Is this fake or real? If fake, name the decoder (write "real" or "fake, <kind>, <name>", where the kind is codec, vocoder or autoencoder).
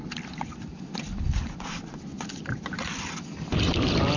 real